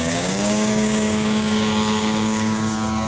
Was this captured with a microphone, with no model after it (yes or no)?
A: no